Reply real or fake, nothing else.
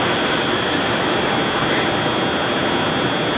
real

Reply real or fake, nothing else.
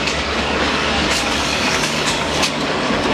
fake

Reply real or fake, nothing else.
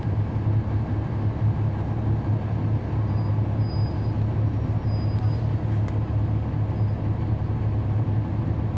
real